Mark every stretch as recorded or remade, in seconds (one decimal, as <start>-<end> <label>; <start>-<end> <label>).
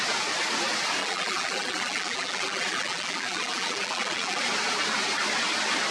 0.0-1.0 recorded; 1.0-4.4 remade; 4.4-5.9 recorded